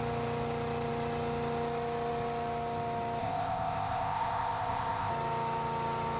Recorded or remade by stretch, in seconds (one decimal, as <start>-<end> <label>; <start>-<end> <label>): 0.0-3.2 recorded; 3.2-5.1 remade; 5.1-6.2 recorded